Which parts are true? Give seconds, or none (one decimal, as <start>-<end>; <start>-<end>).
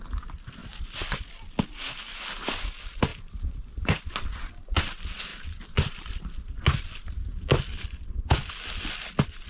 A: 0.0-3.1; 4.0-9.5